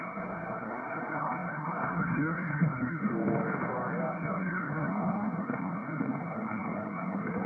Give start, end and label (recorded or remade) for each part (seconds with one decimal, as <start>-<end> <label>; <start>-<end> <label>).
0.0-3.1 remade; 3.1-4.1 recorded; 4.1-7.5 remade

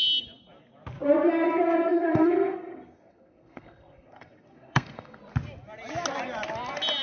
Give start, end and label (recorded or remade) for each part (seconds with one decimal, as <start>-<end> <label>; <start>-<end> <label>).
0.0-1.9 recorded; 1.9-5.2 remade; 5.2-7.0 recorded

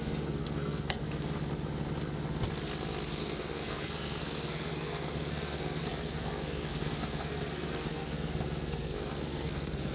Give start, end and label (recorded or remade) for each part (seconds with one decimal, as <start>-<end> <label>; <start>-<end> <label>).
0.0-1.0 remade; 1.0-3.2 recorded; 3.2-9.9 remade

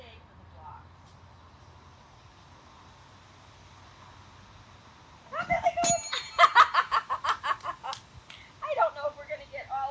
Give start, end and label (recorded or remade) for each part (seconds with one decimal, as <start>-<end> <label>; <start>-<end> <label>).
0.0-9.9 recorded

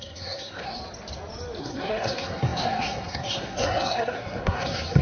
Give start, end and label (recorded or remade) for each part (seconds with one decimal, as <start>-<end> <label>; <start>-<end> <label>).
0.0-0.8 remade; 0.8-1.6 recorded; 1.6-5.0 remade